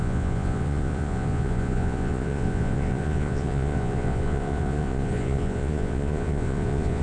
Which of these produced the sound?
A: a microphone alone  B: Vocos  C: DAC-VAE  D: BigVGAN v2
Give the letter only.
B